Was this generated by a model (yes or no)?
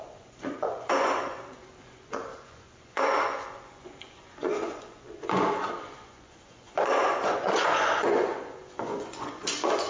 yes